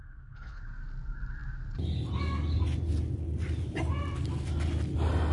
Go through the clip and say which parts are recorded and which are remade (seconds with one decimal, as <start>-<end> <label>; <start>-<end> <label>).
0.0-0.6 remade; 0.6-5.3 recorded